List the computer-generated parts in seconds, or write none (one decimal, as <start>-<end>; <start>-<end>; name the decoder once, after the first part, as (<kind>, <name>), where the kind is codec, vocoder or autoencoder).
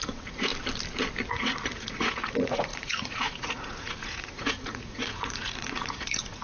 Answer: 0.0-0.5 (vocoder, Vocos); 1.3-6.4